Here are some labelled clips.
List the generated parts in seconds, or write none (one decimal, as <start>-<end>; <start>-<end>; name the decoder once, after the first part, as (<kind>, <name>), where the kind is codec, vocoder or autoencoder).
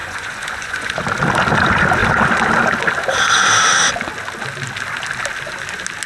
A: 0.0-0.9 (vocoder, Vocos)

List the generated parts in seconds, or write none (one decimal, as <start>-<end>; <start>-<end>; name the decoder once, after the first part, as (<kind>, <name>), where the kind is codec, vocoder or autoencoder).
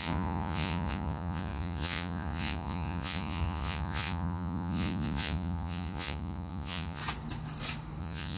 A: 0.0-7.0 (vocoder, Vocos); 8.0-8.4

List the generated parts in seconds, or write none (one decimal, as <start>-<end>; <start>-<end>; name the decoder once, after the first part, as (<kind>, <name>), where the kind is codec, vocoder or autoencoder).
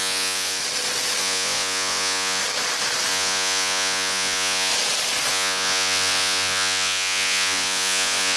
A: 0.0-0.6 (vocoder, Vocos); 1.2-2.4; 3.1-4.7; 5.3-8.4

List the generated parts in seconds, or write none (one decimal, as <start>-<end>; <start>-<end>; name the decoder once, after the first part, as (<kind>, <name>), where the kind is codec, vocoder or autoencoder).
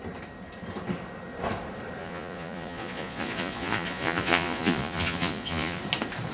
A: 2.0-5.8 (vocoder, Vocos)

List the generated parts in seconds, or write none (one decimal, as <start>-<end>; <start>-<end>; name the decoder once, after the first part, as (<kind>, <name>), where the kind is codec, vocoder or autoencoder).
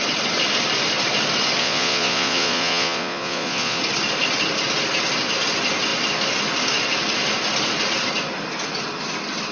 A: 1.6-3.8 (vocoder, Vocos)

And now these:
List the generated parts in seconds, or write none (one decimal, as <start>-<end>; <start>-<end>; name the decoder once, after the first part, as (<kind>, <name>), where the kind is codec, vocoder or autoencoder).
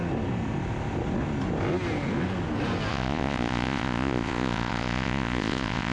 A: 2.9-5.9 (vocoder, Vocos)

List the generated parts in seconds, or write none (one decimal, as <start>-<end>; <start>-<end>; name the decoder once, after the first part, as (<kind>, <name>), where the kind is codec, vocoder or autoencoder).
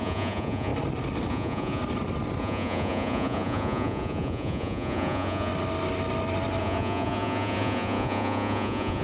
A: 0.0-0.7 (vocoder, Vocos); 1.3-1.8; 2.4-5.5; 6.6-9.0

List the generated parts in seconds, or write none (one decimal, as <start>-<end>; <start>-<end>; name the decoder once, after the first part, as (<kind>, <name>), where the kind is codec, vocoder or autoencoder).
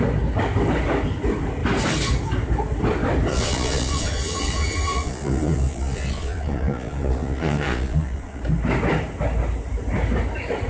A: 3.3-8.4 (vocoder, Vocos)